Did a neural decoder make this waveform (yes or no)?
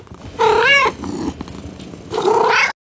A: no